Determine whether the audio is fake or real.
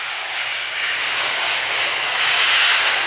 fake